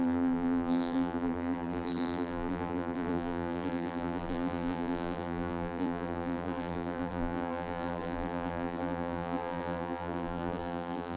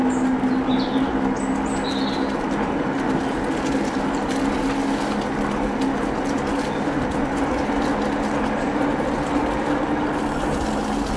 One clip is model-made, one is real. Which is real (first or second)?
second